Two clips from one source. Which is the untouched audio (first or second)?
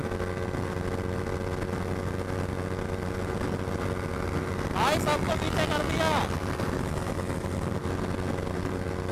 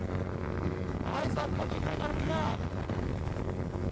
first